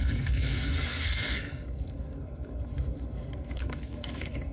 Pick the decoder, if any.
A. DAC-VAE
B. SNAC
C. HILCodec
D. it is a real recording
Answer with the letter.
B